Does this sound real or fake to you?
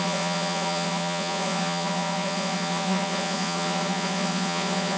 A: fake